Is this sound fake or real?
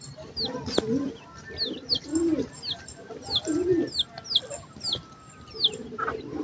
real